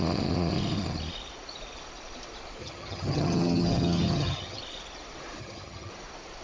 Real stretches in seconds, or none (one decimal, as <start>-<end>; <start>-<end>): 0.0-2.6; 4.6-5.4; 5.9-6.4